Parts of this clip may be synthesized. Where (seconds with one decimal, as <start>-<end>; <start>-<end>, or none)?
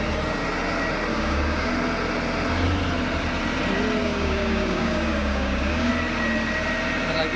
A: 1.1-1.7; 4.0-5.9